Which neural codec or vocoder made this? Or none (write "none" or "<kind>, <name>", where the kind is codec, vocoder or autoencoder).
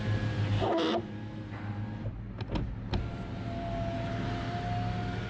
none